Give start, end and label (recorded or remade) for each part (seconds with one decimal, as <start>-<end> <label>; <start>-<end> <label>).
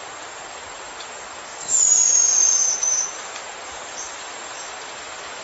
0.0-1.5 recorded; 1.5-4.7 remade; 4.7-5.4 recorded